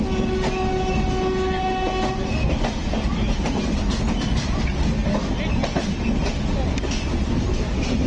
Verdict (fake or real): real